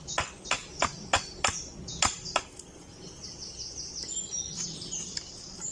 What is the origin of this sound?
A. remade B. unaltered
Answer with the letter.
B